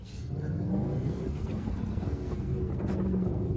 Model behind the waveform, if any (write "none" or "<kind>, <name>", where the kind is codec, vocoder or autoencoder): codec, SNAC